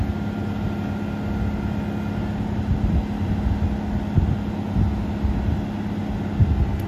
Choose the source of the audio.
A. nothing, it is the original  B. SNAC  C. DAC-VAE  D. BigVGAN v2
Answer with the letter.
A